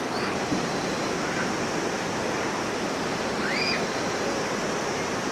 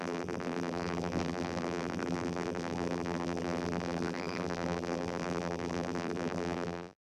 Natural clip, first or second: first